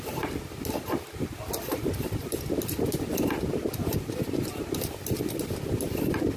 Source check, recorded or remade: recorded